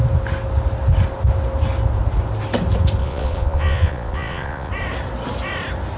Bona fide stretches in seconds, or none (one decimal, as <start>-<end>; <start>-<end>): 0.0-3.0; 4.7-6.0